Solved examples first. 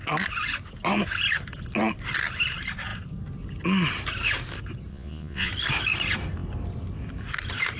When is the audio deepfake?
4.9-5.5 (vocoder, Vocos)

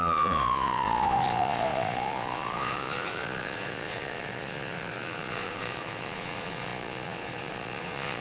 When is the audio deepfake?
0.0-8.2 (vocoder, Vocos)